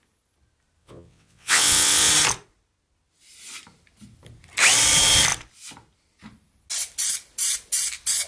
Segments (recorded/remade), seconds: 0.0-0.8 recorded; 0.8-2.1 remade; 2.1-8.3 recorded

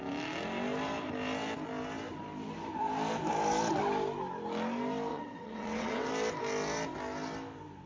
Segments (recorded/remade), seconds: 0.0-5.1 recorded; 5.1-6.1 remade; 6.1-7.9 recorded

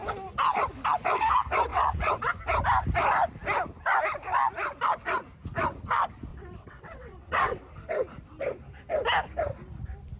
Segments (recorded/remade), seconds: 0.0-1.7 recorded; 1.7-2.4 remade; 2.4-6.3 recorded; 6.3-7.6 remade; 7.6-10.2 recorded